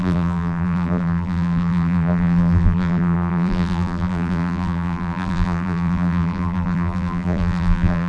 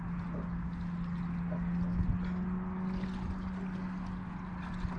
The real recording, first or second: second